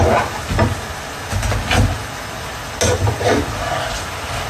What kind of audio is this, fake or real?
real